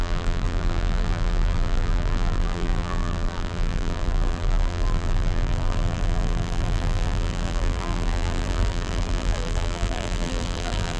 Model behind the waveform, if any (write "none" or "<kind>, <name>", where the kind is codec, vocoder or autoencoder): vocoder, BigVGAN v2